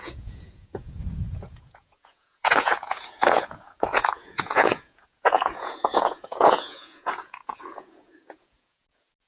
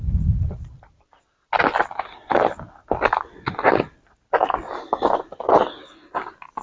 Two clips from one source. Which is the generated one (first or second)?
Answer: first